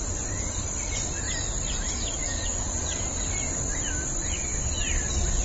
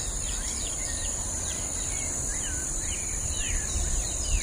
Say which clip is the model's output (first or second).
second